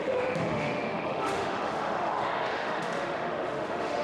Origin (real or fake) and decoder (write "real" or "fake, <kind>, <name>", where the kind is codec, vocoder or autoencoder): fake, autoencoder, DAC-VAE